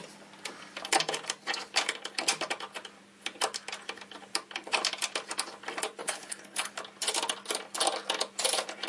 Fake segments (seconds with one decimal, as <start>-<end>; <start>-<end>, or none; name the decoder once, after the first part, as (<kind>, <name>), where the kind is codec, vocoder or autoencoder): 6.0-6.7 (codec, HILCodec)